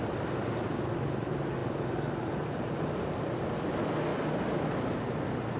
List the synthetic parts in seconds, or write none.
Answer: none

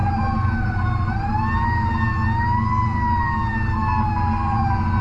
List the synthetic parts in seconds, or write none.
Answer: 0.0-1.4 (vocoder, BigVGAN v2)

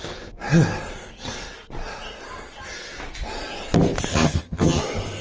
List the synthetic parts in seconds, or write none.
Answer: 4.1-4.8 (vocoder, HiFi-GAN)

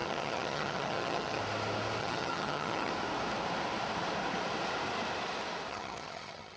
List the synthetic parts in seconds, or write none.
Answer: 0.0-1.4 (vocoder, HiFi-GAN); 2.0-2.9; 5.7-6.6

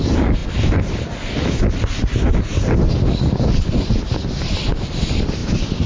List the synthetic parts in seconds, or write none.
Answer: none